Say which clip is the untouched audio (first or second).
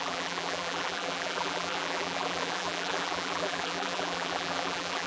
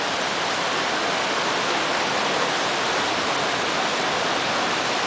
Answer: second